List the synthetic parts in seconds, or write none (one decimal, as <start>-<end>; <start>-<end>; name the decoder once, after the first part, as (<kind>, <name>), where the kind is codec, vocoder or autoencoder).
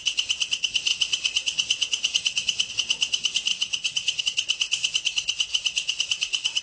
0.9-2.7 (vocoder, Vocos); 3.5-4.2; 5.5-6.6